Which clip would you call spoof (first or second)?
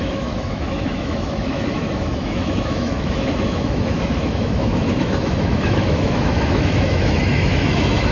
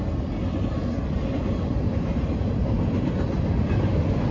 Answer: first